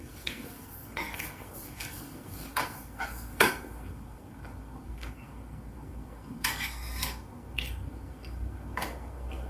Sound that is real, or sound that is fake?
fake